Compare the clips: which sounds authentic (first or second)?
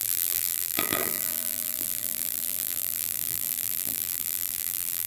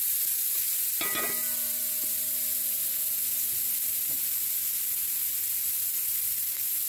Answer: second